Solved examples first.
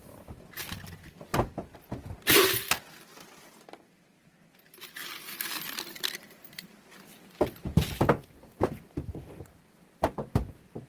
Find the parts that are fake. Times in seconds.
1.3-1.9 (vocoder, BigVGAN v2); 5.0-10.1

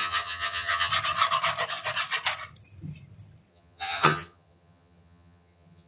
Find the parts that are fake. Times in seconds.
0.0-0.9 (vocoder, HiFi-GAN); 3.5-5.9

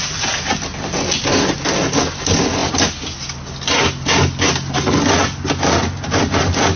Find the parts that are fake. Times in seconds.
none

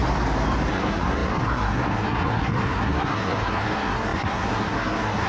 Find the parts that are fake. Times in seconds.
0.7-5.3 (codec, SNAC)

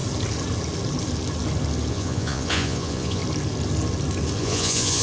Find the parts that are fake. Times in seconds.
1.9-3.2 (vocoder, Vocos); 4.4-5.0

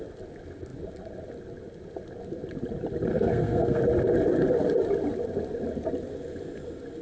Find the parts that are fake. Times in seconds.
3.1-3.8 (codec, SNAC)

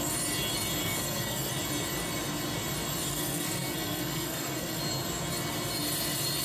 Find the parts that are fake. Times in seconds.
0.8-1.5 (codec, SNAC); 3.1-4.8

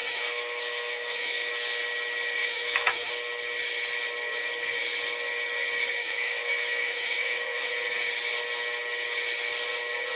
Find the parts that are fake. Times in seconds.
0.0-1.5 (autoencoder, DAC-VAE); 2.4-3.1; 6.0-7.7